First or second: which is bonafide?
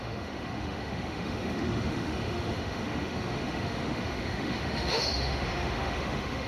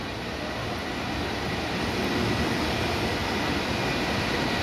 second